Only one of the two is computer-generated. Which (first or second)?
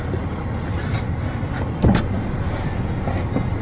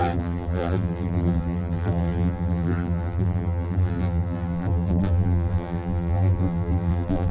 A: second